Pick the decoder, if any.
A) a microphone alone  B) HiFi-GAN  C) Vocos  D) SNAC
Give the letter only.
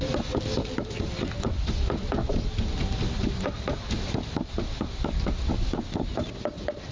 A